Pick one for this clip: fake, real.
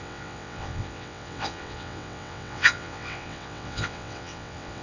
fake